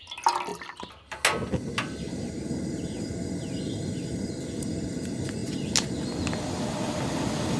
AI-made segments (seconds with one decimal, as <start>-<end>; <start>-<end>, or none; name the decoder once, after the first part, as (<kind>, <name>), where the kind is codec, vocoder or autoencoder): none